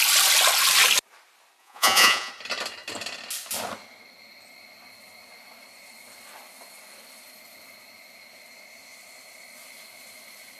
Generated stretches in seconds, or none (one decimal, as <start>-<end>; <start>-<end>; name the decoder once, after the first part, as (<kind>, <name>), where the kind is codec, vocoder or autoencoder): 1.6-2.3 (vocoder, Vocos)